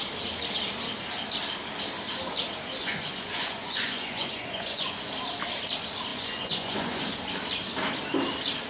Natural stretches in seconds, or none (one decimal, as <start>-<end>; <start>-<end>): 0.0-2.8; 5.1-6.1; 7.0-8.7